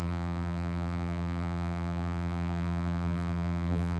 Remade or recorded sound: remade